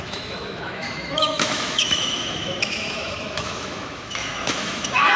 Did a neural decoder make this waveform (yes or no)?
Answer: yes